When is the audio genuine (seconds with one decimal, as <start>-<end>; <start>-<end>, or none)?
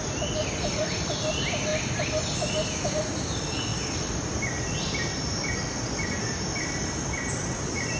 1.7-2.9; 3.7-4.7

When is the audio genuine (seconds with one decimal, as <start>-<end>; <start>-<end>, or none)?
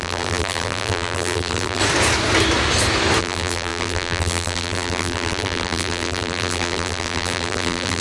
1.8-3.2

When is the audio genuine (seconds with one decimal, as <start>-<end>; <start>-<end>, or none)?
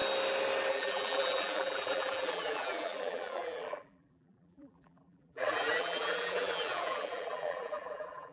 0.0-0.7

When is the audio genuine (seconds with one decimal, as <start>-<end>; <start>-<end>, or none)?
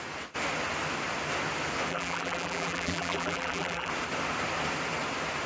0.0-1.9; 3.9-5.5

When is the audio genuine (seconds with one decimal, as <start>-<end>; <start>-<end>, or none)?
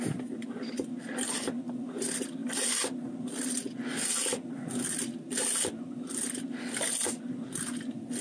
0.0-8.2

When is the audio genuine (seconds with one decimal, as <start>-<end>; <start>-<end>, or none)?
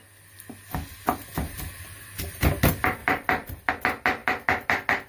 0.0-1.3; 2.5-3.0; 3.7-4.2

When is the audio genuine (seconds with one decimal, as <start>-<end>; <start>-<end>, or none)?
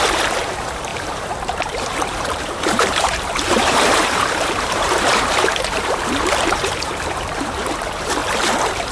8.2-8.9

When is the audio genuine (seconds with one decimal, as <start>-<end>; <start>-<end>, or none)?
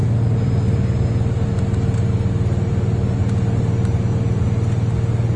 0.0-5.4